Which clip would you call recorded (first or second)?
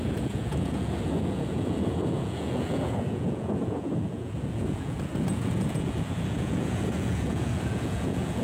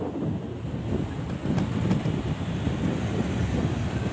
second